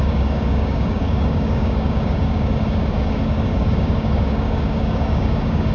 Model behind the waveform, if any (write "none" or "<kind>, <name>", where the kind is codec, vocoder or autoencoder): codec, DAC